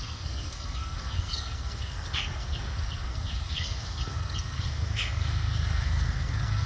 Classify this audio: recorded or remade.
remade